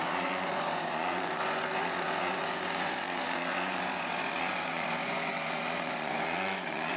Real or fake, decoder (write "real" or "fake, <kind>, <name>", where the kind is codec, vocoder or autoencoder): fake, vocoder, Vocos